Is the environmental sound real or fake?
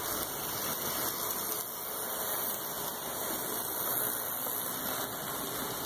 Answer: real